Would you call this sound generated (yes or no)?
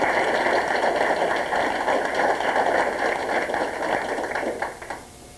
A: no